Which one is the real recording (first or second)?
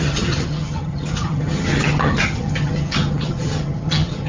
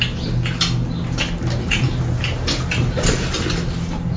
second